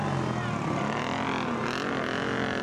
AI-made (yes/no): no